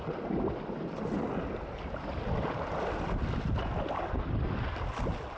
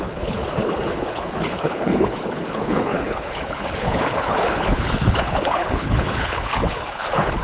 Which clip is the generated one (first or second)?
second